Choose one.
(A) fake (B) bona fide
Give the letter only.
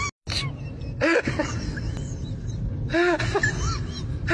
B